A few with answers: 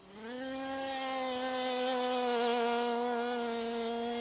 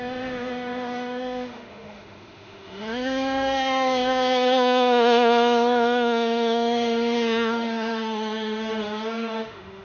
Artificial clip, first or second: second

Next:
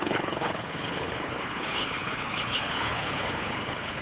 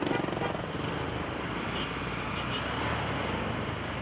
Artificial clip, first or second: first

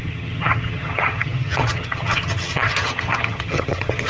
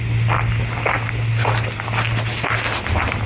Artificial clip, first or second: first